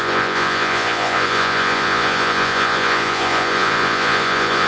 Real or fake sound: fake